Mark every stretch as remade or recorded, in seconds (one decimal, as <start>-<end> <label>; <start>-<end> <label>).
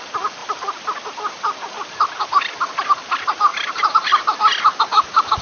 0.0-3.5 recorded; 3.5-4.1 remade; 4.1-5.4 recorded